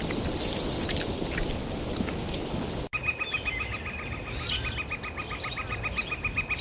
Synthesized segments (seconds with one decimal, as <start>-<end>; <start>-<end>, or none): none